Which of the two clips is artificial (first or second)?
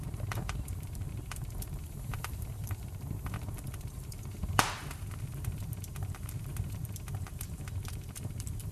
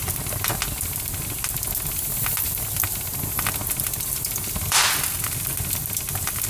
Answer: first